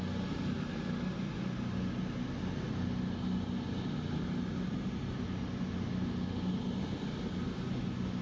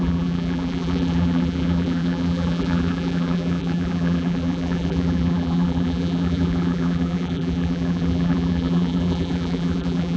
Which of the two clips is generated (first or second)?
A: second